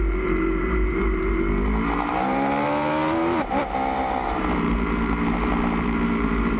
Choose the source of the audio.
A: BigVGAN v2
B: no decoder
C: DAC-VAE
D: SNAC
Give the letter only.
A